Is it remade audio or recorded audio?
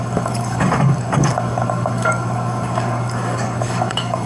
remade